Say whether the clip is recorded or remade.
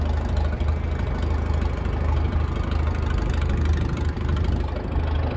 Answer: recorded